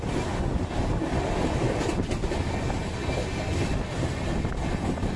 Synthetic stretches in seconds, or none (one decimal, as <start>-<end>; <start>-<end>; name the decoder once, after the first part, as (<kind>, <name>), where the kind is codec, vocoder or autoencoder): none